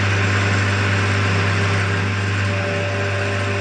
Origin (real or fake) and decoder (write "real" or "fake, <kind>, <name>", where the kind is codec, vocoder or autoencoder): real